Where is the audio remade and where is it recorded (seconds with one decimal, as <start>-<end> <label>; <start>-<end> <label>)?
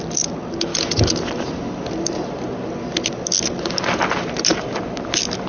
0.0-5.5 recorded